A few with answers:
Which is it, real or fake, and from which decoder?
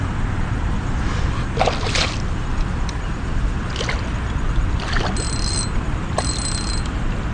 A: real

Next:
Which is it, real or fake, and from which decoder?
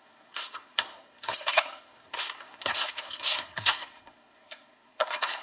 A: fake, codec, SNAC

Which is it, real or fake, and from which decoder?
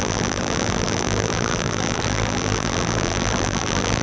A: fake, vocoder, BigVGAN v2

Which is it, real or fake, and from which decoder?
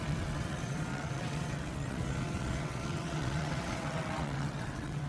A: fake, vocoder, WaveNeXt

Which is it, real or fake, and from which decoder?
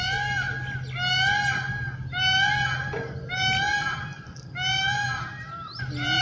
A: real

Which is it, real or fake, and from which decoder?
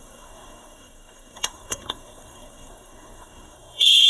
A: fake, codec, SNAC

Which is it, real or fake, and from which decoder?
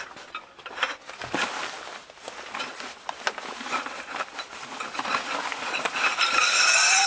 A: real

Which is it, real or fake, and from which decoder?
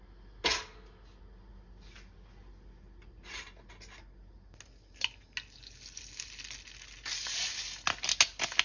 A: real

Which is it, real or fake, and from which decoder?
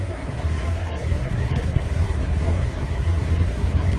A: fake, codec, SNAC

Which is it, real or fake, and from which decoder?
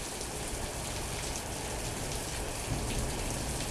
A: real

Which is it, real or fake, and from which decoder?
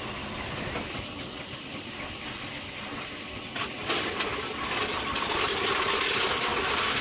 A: real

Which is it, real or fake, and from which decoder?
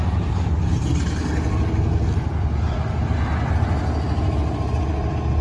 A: real